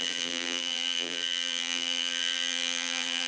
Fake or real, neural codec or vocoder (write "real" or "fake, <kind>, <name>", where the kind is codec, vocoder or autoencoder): fake, vocoder, BigVGAN v2